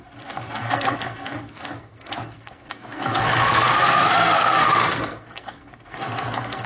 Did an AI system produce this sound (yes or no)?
yes